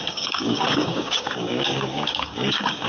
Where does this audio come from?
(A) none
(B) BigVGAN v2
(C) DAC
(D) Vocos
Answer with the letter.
C